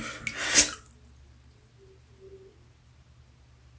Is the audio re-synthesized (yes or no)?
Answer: no